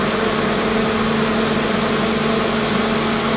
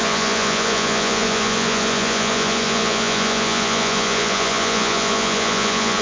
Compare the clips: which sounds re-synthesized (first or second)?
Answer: second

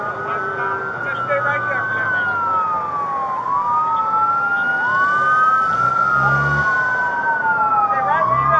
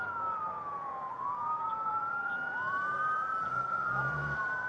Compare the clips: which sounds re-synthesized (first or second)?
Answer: second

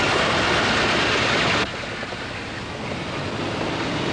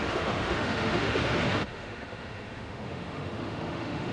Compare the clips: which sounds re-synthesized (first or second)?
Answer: second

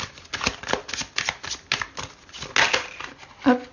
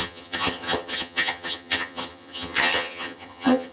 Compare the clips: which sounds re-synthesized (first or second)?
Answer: second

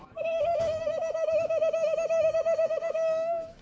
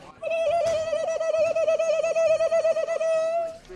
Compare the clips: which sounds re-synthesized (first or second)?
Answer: first